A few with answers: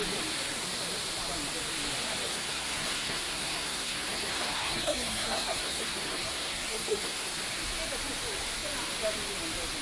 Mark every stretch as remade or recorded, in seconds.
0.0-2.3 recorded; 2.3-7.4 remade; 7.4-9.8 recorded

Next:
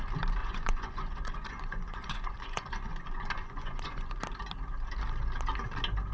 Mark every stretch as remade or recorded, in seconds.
0.0-0.4 recorded; 0.4-4.1 remade; 4.1-6.1 recorded